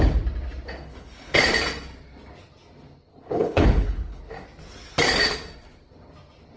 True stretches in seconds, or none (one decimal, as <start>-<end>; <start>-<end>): 0.0-0.8; 1.4-3.1; 4.2-6.6